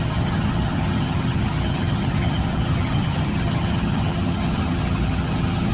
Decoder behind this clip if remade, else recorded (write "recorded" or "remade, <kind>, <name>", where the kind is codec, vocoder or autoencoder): remade, vocoder, HiFi-GAN